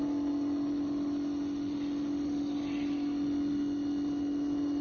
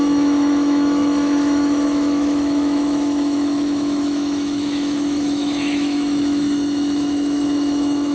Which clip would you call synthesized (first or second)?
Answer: second